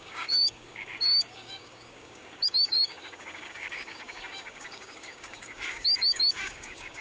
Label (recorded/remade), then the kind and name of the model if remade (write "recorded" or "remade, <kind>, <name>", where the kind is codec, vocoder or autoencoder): remade, codec, DAC